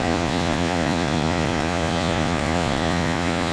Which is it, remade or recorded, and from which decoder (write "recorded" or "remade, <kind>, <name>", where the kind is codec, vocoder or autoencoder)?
remade, vocoder, Vocos